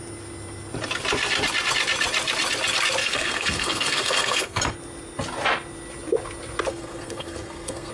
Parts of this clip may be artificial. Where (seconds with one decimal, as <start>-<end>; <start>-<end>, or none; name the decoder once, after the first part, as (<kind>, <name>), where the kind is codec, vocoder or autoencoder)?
3.0-4.6 (codec, SNAC); 6.7-7.9